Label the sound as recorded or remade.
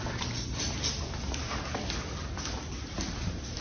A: remade